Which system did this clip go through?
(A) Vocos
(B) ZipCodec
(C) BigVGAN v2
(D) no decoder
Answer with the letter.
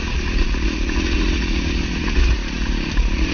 A